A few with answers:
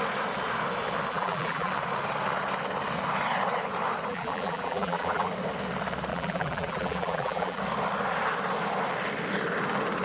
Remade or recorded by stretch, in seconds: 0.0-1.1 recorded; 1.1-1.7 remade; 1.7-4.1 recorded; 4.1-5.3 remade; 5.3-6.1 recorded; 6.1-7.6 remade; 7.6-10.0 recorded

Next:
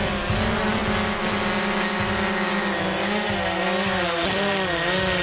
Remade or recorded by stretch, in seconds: 0.0-5.2 recorded

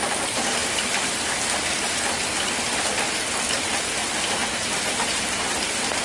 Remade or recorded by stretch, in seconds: 0.0-4.4 remade; 4.4-5.1 recorded; 5.1-6.0 remade

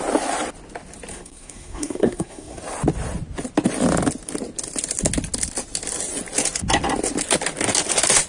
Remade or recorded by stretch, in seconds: 0.0-1.1 recorded; 1.1-2.6 remade; 2.6-8.3 recorded

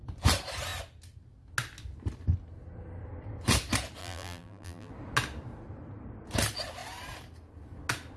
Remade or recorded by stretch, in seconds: 0.0-4.0 recorded; 4.0-4.9 remade; 4.9-8.2 recorded

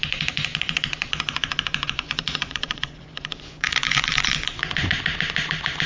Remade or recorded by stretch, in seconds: 0.0-5.9 remade

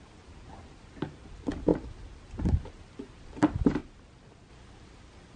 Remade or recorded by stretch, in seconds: 0.0-3.8 remade; 3.8-4.5 recorded; 4.5-5.4 remade

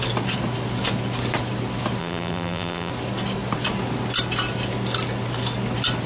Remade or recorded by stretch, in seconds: 0.0-2.0 recorded; 2.0-2.9 remade; 2.9-6.1 recorded